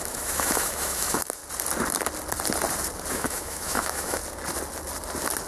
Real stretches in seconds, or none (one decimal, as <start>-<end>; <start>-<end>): 1.4-3.1; 4.2-5.5